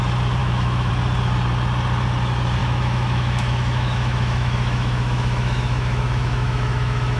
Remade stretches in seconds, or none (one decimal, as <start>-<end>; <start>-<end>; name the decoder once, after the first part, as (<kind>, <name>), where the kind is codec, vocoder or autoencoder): 0.4-0.9 (autoencoder, DAC-VAE); 2.6-7.2